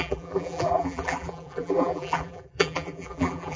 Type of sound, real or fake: fake